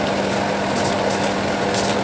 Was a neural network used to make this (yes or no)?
no